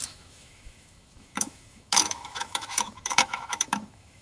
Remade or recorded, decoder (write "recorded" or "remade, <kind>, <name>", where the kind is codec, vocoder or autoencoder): remade, autoencoder, DAC-VAE